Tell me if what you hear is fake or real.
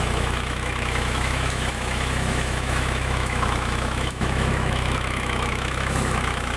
fake